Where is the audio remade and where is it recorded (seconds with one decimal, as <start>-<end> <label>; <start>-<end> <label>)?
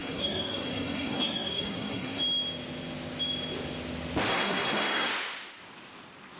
0.0-2.2 remade; 2.2-4.3 recorded; 4.3-5.1 remade; 5.1-6.4 recorded